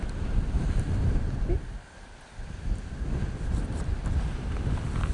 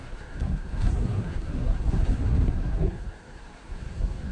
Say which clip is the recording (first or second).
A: first